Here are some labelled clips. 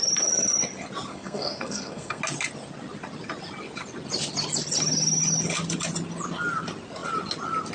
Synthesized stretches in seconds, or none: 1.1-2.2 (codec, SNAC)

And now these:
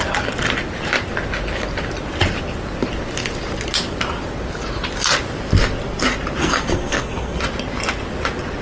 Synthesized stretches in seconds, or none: 6.4-7.4 (codec, SNAC)

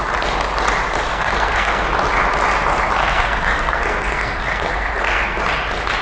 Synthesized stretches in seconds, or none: 1.1-1.9 (codec, SNAC); 3.0-5.4